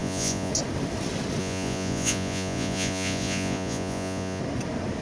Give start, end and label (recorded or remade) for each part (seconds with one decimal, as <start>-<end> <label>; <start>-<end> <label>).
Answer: 0.0-0.5 remade; 0.5-1.4 recorded; 1.4-4.4 remade; 4.4-5.0 recorded